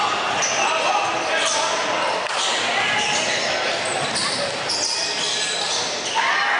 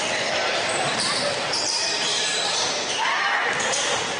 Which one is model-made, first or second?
second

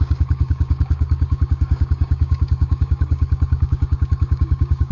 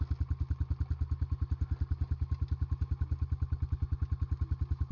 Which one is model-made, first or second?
first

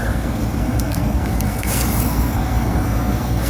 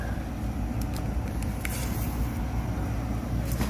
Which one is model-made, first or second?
first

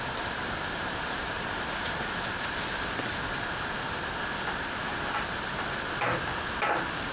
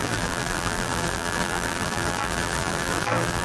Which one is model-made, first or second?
second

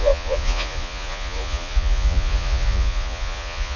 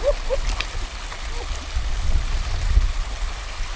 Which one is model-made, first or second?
first